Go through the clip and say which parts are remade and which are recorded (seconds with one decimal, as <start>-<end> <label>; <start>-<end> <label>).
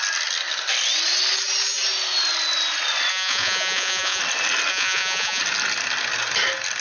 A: 0.0-3.1 recorded; 3.1-4.2 remade; 4.2-4.7 recorded; 4.7-5.4 remade; 5.4-6.8 recorded